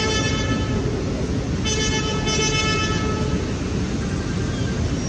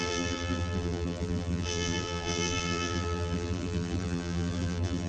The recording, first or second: first